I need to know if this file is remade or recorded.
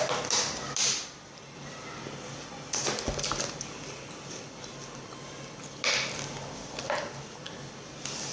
recorded